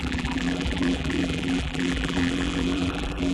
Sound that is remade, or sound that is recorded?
remade